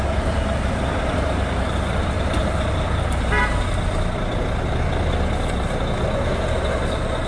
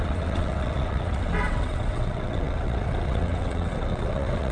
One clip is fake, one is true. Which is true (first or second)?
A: first